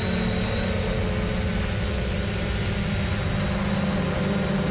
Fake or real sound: real